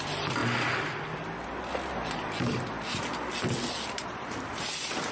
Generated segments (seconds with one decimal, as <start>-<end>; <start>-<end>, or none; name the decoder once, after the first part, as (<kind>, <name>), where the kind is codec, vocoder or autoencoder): 4.0-4.5 (vocoder, BigVGAN v2)